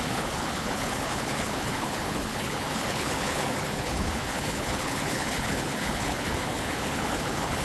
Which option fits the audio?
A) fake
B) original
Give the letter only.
A